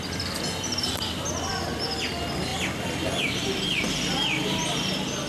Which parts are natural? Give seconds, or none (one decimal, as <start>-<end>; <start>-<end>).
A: 0.0-5.3